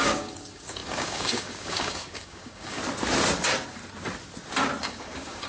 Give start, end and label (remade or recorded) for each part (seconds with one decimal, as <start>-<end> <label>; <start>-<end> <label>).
0.0-2.8 remade; 2.8-4.8 recorded; 4.8-5.5 remade